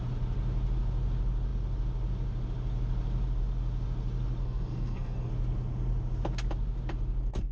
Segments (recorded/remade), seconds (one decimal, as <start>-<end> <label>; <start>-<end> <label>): 0.0-4.4 recorded; 4.4-5.3 remade; 5.3-7.5 recorded